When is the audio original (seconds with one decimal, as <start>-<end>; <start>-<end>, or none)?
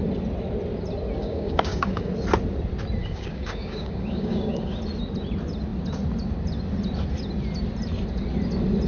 0.0-1.2; 2.1-3.0; 4.7-8.9